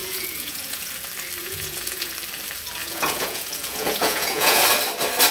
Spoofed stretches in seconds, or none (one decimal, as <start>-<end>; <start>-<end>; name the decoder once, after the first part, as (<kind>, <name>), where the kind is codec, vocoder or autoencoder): 0.0-0.9 (vocoder, Vocos); 1.4-2.1; 2.8-4.6